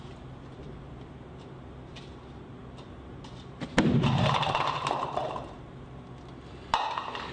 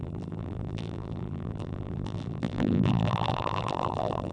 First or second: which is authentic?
first